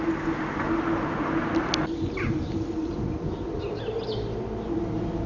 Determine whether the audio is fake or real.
real